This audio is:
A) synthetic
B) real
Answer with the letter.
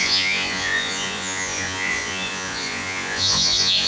A